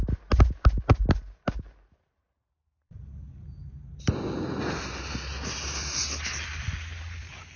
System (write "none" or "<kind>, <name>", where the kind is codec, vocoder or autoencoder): none